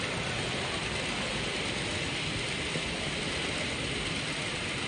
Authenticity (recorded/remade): recorded